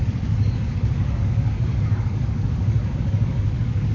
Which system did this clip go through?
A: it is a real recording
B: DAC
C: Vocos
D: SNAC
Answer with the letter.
B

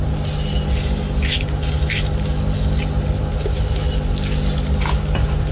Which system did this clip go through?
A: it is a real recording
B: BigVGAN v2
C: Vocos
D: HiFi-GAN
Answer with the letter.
A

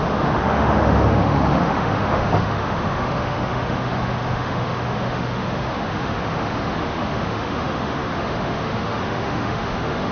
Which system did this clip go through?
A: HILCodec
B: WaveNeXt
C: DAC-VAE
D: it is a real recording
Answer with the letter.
C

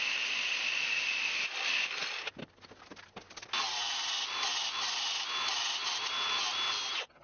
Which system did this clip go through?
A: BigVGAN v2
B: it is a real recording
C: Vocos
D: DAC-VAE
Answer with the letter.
B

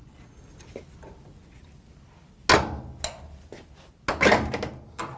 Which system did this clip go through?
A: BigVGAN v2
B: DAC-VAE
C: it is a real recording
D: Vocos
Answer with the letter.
C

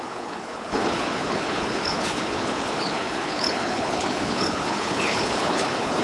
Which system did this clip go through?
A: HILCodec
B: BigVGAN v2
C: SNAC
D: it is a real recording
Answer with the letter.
A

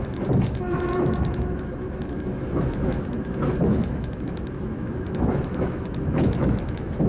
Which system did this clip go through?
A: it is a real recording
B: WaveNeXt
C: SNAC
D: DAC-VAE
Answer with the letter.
D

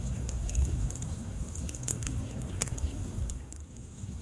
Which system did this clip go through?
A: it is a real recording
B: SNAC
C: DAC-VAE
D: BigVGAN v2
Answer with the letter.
B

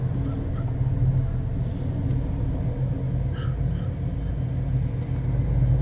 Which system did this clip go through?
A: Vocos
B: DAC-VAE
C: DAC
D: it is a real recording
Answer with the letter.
D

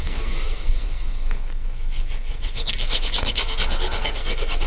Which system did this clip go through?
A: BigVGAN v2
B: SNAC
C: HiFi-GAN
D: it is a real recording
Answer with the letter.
B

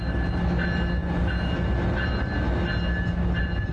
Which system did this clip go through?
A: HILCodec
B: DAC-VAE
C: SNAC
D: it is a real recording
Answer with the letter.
D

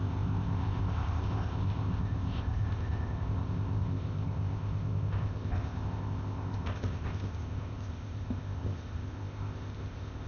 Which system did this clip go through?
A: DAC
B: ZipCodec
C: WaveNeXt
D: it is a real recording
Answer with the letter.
B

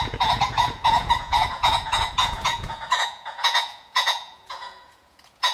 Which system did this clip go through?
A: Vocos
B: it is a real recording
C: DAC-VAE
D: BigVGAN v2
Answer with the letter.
A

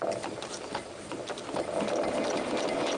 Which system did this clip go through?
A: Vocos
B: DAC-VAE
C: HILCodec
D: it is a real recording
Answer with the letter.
D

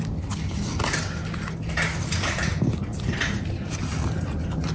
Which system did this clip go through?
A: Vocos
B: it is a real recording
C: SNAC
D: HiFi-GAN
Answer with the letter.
B